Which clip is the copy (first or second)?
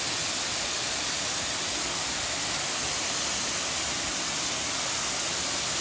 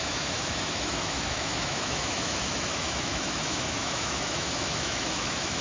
second